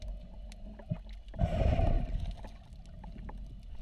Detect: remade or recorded recorded